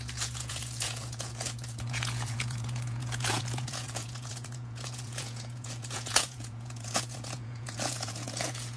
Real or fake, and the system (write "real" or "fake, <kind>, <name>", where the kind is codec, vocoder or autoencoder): fake, vocoder, Vocos